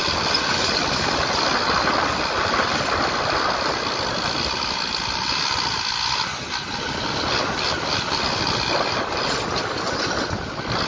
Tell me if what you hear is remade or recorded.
recorded